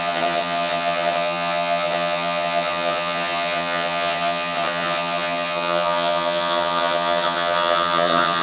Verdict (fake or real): fake